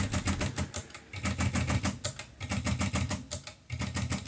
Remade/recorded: recorded